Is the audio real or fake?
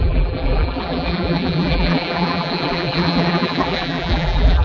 fake